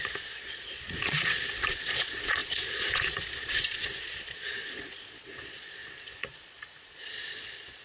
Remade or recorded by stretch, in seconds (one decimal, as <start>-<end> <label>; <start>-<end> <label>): 0.0-7.8 remade